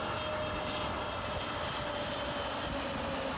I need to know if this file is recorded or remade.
recorded